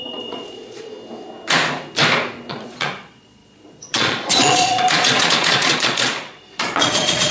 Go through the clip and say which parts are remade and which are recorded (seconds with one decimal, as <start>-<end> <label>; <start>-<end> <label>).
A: 0.0-0.9 remade; 0.9-2.5 recorded; 2.5-7.3 remade